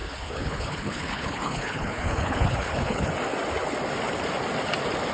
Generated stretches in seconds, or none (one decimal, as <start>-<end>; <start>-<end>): 0.0-3.1